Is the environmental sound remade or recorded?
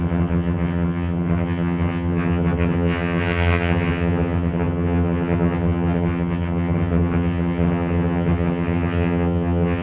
remade